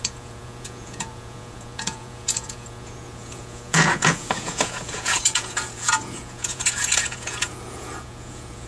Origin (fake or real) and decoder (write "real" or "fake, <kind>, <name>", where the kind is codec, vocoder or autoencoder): fake, vocoder, Vocos